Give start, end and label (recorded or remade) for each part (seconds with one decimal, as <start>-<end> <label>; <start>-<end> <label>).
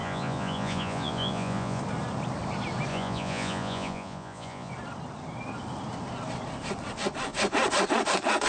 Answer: 0.0-1.8 remade; 1.8-2.9 recorded; 2.9-4.7 remade; 4.7-8.5 recorded